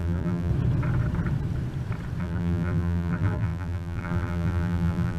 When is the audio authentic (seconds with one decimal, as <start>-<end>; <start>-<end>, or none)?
0.5-2.2